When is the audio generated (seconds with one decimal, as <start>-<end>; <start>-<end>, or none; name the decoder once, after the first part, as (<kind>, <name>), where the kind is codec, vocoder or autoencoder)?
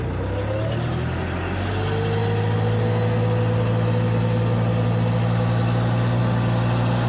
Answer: none